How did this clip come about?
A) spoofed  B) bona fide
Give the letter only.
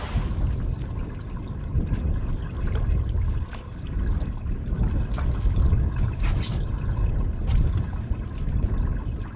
B